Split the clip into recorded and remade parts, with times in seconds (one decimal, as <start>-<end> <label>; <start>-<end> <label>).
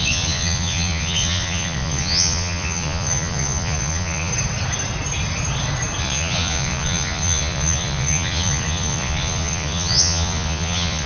0.0-4.3 remade; 4.3-6.0 recorded; 6.0-11.1 remade